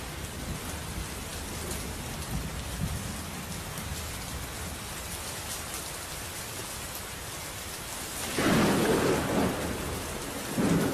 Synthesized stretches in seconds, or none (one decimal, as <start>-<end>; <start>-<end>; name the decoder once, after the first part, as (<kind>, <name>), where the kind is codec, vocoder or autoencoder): none